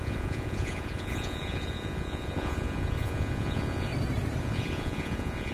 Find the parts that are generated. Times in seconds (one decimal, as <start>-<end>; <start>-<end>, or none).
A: 0.0-3.9; 4.4-5.5